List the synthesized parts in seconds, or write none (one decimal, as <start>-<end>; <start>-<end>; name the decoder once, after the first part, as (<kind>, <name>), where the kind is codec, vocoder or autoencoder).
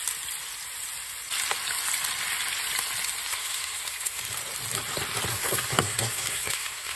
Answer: 3.3-4.2 (codec, SNAC); 5.3-7.0